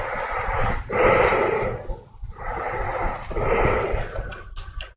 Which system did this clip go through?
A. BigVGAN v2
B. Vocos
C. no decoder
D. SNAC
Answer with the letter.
C